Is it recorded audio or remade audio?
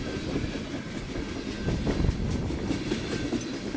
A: recorded